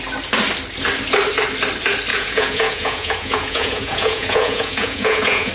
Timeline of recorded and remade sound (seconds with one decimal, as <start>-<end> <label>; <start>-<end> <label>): 0.0-2.1 recorded; 2.1-5.5 remade